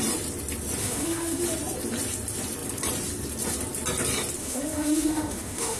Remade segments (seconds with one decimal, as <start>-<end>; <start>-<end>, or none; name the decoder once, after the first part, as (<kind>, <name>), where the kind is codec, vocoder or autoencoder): 0.8-1.4 (autoencoder, DAC-VAE); 4.4-5.8